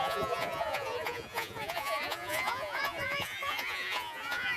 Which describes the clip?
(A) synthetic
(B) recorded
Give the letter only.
A